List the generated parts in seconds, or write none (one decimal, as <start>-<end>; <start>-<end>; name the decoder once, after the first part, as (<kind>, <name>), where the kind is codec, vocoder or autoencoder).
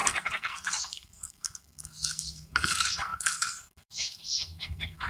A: 0.0-5.1 (codec, SNAC)